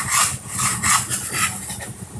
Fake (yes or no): no